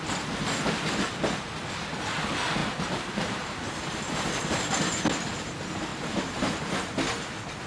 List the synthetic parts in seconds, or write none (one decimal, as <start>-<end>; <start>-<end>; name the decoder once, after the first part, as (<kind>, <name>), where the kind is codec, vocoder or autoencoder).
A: 2.6-4.8 (vocoder, BigVGAN v2); 5.9-6.7